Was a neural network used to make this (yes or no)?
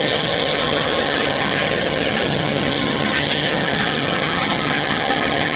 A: yes